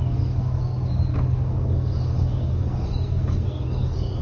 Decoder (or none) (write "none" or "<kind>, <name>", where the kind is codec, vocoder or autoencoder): codec, SNAC